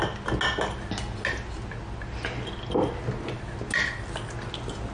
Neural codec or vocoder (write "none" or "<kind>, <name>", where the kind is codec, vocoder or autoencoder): none